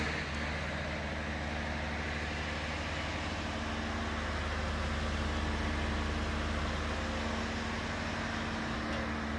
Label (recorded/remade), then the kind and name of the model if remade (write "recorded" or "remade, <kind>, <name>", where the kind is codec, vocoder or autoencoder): recorded